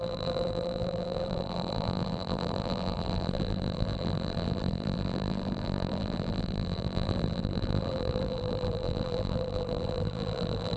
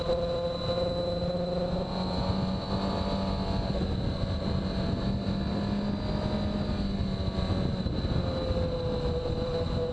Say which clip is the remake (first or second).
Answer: first